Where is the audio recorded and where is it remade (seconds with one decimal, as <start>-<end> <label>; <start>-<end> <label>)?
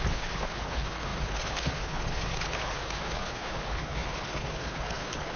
0.0-5.4 remade